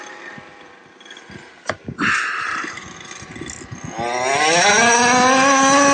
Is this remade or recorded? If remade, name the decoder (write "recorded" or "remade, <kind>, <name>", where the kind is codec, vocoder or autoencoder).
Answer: recorded